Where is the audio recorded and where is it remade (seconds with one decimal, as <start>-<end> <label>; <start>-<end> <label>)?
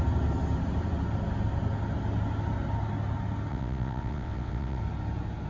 0.0-3.5 recorded; 3.5-4.8 remade; 4.8-5.5 recorded